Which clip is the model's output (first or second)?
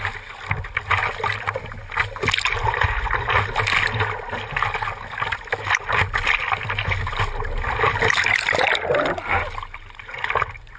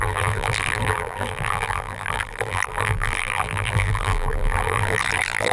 second